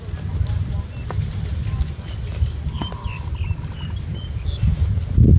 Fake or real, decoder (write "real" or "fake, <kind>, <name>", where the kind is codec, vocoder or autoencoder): real